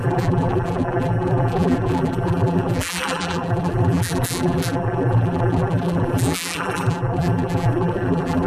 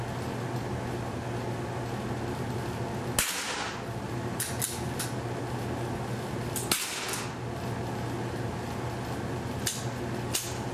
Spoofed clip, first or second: first